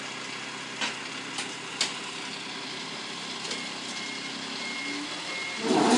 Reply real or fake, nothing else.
real